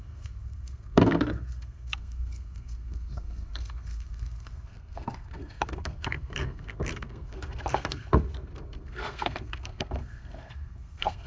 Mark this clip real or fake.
fake